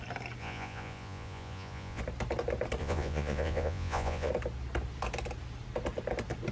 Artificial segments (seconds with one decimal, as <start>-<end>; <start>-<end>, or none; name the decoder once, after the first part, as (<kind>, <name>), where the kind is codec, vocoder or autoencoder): 0.4-2.0 (vocoder, Vocos); 2.8-4.3